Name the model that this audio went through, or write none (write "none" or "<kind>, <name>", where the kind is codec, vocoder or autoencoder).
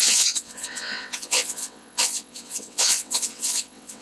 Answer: vocoder, WaveNeXt